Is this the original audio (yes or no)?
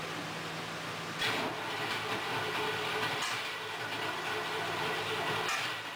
yes